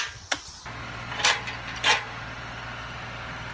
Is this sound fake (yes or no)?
no